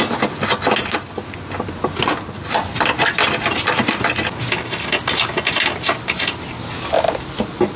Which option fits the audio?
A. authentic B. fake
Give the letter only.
A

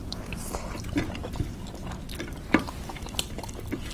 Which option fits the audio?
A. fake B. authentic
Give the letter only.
B